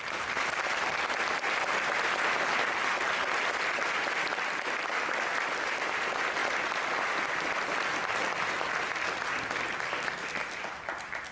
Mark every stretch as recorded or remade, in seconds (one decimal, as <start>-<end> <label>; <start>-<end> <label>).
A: 0.0-2.8 recorded; 2.8-4.9 remade; 4.9-6.4 recorded; 6.4-7.7 remade; 7.7-11.3 recorded